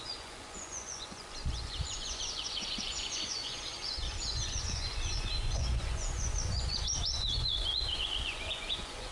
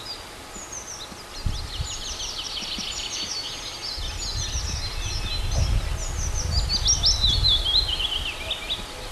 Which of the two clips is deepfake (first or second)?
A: first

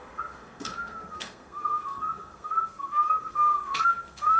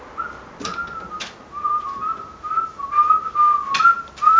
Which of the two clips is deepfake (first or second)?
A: first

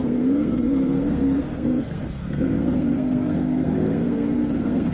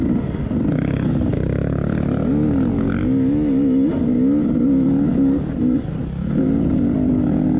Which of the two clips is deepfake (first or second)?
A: first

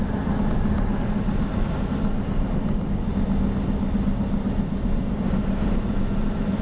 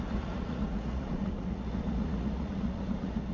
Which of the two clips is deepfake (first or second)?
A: second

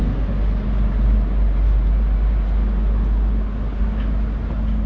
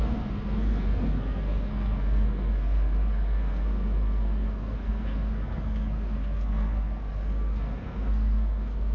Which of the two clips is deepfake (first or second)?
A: second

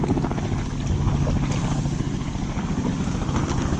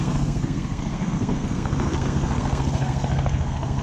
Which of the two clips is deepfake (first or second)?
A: second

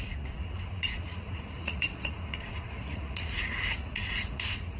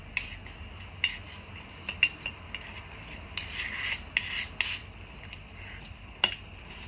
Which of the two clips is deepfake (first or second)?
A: first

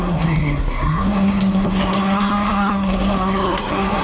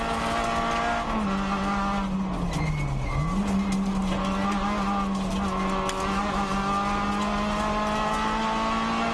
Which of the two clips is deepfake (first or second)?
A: first